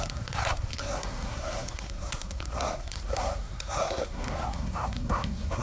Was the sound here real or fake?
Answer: fake